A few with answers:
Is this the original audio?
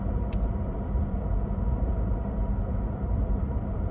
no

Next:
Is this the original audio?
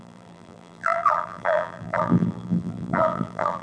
no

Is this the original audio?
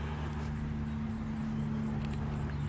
yes